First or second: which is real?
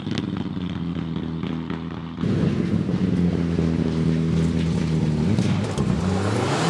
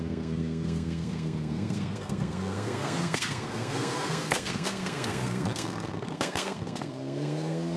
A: first